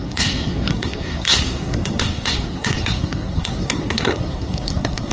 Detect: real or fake fake